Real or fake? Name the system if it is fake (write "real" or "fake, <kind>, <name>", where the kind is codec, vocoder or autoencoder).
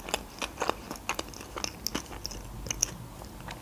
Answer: real